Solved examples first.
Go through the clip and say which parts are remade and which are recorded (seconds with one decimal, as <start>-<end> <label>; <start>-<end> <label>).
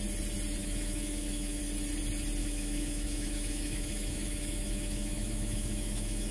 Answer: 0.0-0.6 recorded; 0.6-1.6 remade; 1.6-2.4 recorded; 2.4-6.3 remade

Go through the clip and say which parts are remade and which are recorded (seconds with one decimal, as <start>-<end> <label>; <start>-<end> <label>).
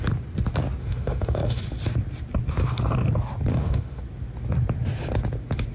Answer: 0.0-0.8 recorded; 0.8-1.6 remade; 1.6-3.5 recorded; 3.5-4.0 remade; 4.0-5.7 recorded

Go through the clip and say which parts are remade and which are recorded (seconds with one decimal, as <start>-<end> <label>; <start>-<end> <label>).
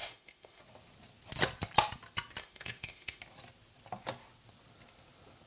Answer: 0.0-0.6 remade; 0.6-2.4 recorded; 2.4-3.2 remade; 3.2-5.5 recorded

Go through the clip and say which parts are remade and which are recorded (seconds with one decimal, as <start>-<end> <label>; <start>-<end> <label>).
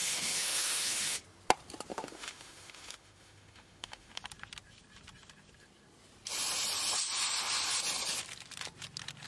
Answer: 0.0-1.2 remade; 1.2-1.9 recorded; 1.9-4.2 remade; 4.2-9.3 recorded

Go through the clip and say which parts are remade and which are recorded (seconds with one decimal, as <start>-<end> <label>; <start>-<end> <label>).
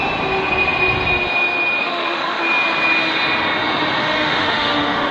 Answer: 0.0-1.8 recorded; 1.8-2.4 remade; 2.4-4.0 recorded; 4.0-5.1 remade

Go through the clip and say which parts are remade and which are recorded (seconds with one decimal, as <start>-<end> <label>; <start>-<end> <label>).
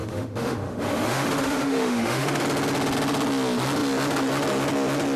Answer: 0.0-2.4 remade; 2.4-5.2 recorded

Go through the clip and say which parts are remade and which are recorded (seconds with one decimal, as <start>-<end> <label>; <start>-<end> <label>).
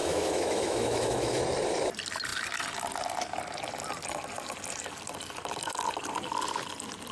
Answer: 0.0-1.4 remade; 1.4-7.1 recorded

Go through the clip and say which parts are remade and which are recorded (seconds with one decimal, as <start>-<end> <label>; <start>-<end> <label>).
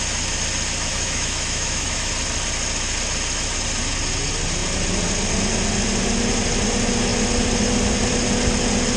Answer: 0.0-0.9 recorded; 0.9-2.1 remade; 2.1-9.0 recorded